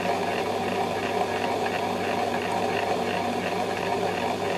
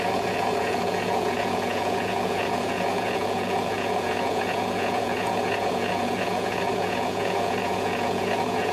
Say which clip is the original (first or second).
first